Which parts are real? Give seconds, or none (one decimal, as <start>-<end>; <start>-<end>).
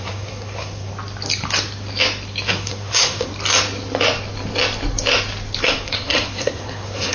0.9-2.5; 3.3-5.6